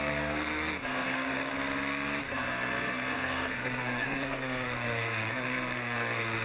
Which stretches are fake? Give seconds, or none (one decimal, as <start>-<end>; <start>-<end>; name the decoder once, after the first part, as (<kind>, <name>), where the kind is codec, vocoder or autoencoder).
0.0-1.5 (codec, SNAC); 2.2-6.4